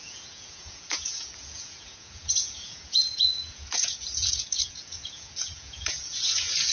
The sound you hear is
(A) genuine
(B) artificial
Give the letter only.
B